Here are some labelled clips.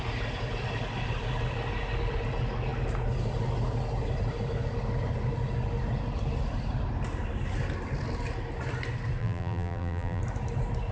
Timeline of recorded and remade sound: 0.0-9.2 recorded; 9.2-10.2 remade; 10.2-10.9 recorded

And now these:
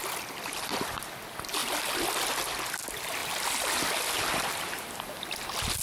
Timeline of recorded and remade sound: 0.0-5.8 recorded

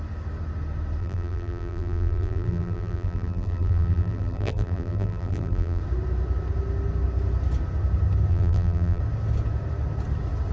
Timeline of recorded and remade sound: 0.0-1.0 recorded; 1.0-5.8 remade; 5.8-8.3 recorded; 8.3-9.0 remade; 9.0-10.5 recorded

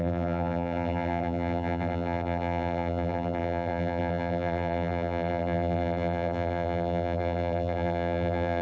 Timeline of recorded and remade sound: 0.0-8.6 remade

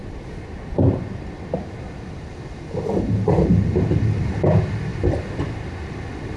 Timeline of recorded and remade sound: 0.0-6.4 recorded